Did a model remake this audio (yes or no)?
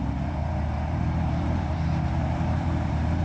yes